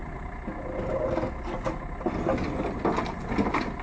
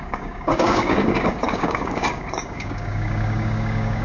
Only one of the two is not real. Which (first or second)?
second